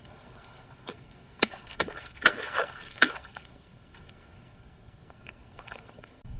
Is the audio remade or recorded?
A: remade